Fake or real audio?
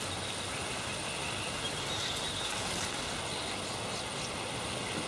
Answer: real